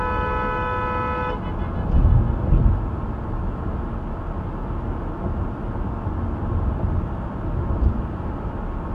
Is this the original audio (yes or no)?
yes